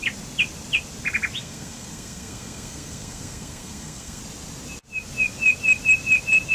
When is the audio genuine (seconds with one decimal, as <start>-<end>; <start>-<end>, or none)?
0.0-1.4; 4.2-6.5